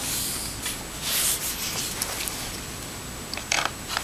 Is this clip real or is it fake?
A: real